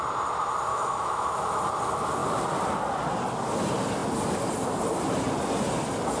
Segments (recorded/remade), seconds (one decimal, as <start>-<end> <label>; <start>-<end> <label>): 0.0-0.7 recorded; 0.7-1.6 remade; 1.6-6.2 recorded